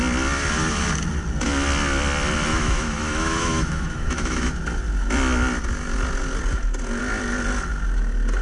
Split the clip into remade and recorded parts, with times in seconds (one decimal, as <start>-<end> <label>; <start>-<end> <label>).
0.0-2.5 recorded; 2.5-4.5 remade; 4.5-8.4 recorded